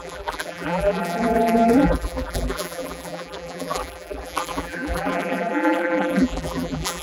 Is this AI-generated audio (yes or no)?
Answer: yes